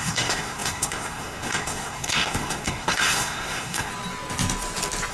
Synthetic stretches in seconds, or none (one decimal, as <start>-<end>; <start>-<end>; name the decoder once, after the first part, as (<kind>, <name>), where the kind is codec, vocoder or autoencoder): 0.0-3.9 (codec, SNAC)